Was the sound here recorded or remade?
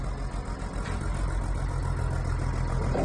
recorded